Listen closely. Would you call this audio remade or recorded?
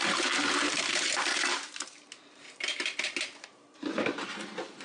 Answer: remade